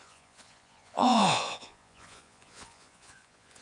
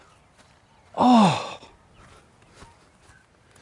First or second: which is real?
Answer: second